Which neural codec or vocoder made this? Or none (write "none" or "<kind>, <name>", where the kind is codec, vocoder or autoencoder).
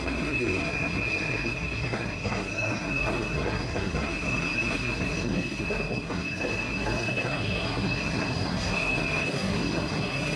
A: codec, SNAC